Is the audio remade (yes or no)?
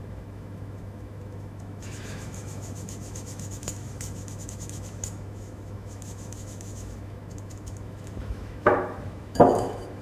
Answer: yes